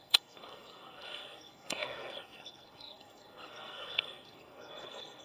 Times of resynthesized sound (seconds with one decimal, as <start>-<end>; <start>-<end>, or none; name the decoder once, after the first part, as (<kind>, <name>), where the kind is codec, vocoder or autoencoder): 0.0-5.2 (codec, SNAC)